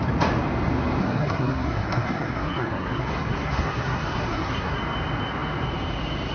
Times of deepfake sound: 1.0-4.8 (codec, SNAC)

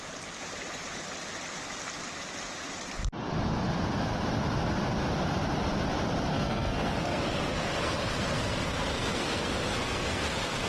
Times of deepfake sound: 6.3-10.7 (codec, SNAC)

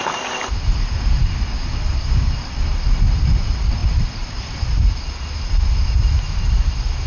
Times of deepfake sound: none

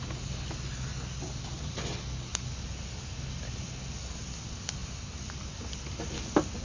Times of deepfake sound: none

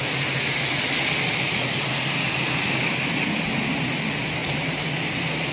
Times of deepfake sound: none

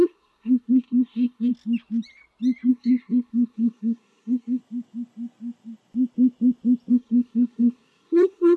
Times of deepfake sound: 0.0-1.5 (codec, SNAC); 2.7-4.6; 6.9-8.6